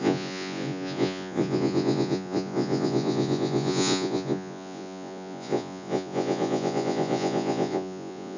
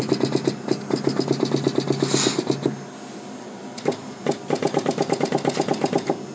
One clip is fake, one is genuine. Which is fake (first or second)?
first